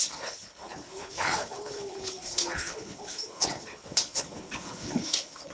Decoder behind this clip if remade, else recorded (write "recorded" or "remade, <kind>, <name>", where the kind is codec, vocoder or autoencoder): remade, codec, HILCodec